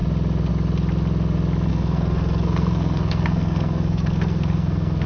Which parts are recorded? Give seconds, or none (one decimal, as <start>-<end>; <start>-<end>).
0.0-1.7